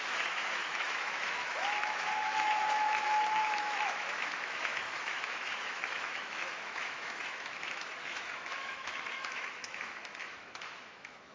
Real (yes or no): no